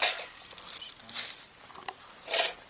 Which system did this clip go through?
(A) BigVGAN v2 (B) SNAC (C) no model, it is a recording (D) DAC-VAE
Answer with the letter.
C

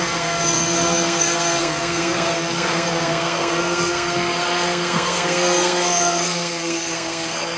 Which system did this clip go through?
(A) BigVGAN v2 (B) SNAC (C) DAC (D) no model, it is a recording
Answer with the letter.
B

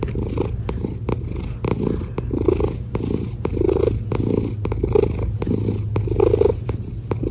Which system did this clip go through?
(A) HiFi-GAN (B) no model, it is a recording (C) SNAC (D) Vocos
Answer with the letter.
B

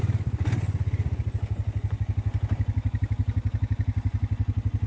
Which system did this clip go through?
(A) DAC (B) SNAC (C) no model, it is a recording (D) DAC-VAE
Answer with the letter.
C